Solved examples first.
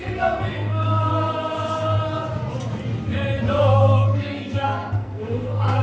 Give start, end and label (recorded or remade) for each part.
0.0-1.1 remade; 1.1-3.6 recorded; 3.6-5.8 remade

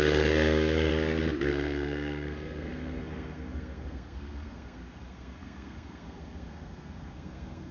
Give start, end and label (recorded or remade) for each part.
0.0-0.9 remade; 0.9-1.5 recorded; 1.5-7.7 remade

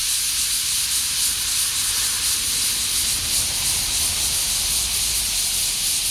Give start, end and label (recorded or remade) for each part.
0.0-6.1 recorded